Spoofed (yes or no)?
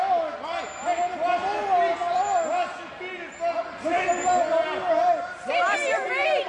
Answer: no